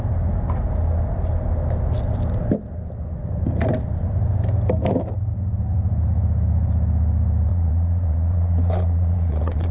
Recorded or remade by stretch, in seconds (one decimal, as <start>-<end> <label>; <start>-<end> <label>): 0.0-7.5 recorded; 7.5-9.7 remade